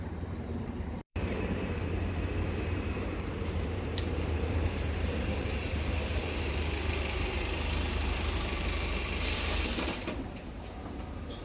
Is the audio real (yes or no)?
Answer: no